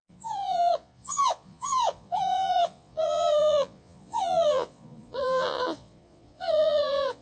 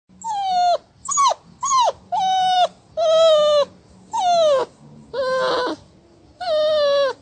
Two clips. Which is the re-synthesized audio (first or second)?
first